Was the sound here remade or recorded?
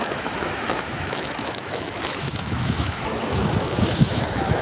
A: remade